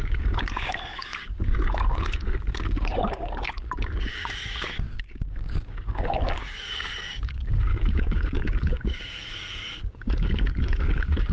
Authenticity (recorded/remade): remade